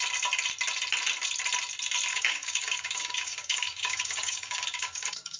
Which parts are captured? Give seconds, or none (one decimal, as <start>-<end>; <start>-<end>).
0.0-2.1